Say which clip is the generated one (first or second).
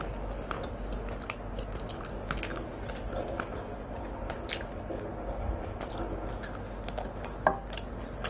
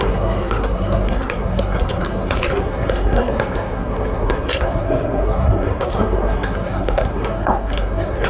second